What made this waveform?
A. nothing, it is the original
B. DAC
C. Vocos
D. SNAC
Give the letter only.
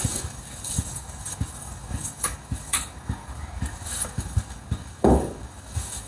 B